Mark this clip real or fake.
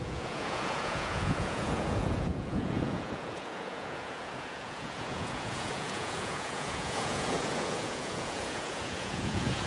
fake